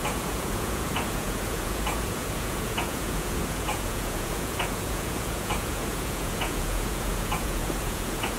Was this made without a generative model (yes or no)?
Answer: no